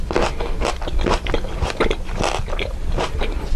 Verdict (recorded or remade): recorded